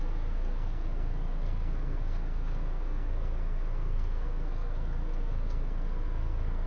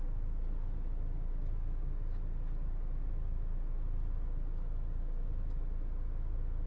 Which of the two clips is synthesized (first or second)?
first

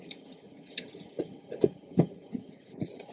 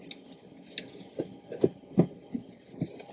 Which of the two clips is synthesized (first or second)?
first